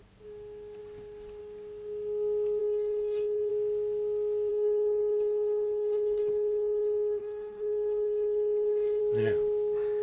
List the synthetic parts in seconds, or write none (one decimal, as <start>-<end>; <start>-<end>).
2.6-3.5; 4.5-9.0